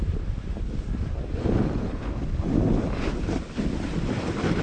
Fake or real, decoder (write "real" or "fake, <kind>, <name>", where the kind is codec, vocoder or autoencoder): real